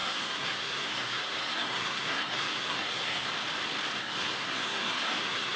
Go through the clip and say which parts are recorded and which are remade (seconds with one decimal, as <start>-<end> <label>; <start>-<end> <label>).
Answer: 0.0-3.3 remade; 3.3-4.0 recorded; 4.0-5.6 remade